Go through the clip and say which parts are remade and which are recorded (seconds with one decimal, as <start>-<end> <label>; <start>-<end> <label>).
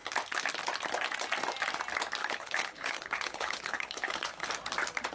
0.0-2.2 recorded; 2.2-4.5 remade; 4.5-5.1 recorded